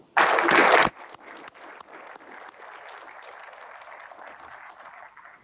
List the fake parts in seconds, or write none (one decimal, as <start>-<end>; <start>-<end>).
none